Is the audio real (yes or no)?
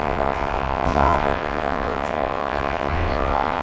no